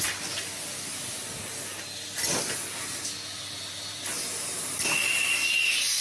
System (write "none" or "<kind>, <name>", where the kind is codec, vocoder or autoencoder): none